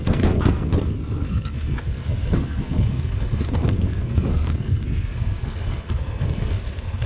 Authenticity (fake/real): fake